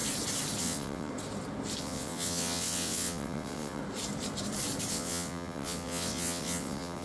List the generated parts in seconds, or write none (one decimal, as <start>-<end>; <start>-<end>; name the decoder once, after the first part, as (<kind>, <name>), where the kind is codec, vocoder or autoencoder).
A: 0.6-1.1 (vocoder, WaveNeXt); 1.8-3.8; 4.9-7.0